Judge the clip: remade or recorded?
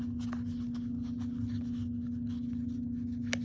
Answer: recorded